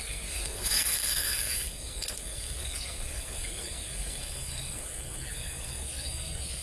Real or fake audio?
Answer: fake